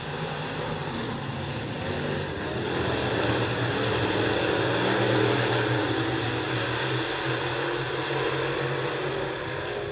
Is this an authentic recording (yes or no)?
yes